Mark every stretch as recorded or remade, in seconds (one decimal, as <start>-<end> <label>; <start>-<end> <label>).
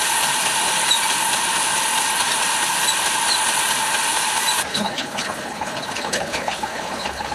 0.0-4.7 recorded; 4.7-7.3 remade